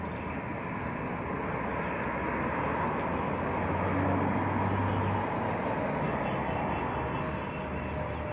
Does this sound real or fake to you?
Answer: real